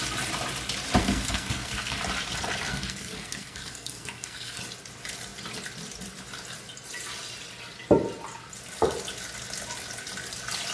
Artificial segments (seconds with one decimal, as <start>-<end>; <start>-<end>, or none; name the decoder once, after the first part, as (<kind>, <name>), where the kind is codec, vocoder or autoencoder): 1.0-2.0 (codec, SNAC); 2.7-4.6